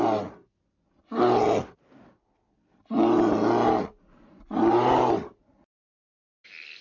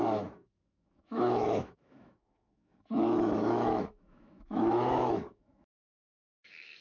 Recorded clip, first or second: first